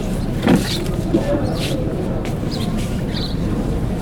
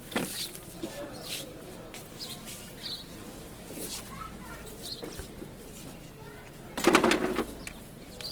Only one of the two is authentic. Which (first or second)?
second